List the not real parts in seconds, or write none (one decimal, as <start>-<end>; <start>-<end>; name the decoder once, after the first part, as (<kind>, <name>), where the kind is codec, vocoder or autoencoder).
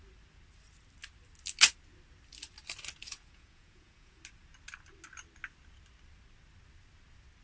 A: 3.1-4.2 (vocoder, Vocos)